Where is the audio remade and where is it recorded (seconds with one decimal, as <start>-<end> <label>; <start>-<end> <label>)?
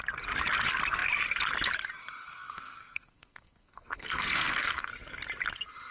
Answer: 0.0-2.2 recorded; 2.2-4.9 remade; 4.9-5.9 recorded